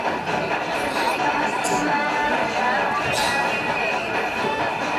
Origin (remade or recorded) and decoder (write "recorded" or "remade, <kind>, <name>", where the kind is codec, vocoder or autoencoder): recorded